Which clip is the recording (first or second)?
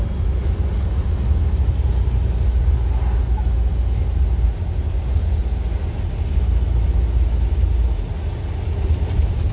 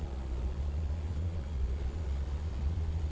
first